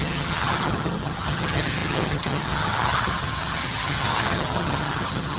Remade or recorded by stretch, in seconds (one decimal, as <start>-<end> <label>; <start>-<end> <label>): 0.0-5.4 remade